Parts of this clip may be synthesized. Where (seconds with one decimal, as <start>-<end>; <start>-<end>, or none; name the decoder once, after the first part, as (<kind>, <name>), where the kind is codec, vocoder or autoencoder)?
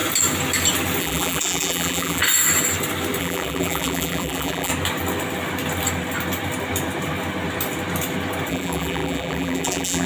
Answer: 1.0-2.2 (vocoder, BigVGAN v2); 3.2-4.7; 8.5-10.1